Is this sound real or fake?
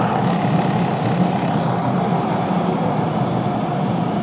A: real